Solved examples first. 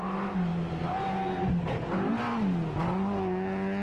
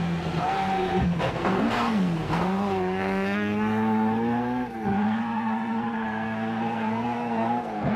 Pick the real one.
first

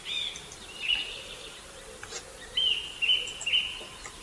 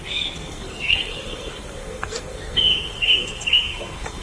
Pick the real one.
first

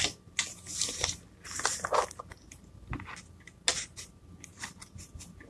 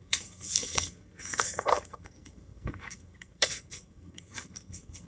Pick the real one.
first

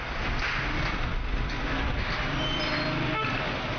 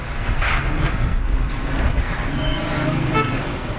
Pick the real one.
first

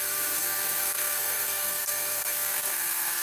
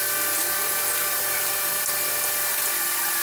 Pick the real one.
second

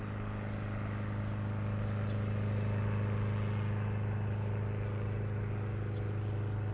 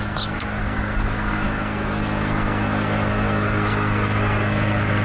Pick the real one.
first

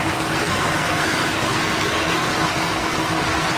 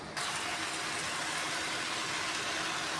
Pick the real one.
second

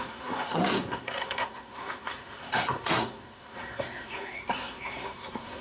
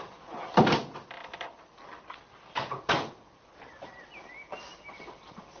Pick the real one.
second